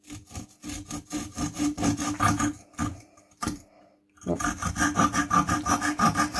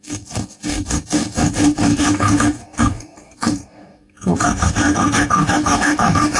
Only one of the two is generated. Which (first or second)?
second